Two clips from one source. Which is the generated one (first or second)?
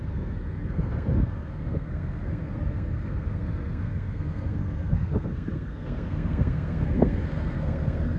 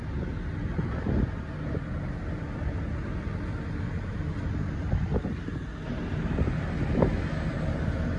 first